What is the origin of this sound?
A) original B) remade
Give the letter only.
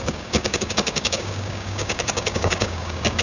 B